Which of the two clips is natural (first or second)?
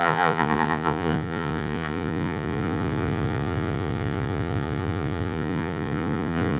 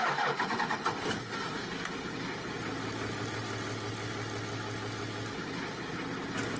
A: second